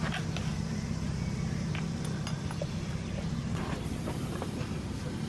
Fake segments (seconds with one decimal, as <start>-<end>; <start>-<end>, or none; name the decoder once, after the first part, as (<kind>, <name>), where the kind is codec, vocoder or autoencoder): none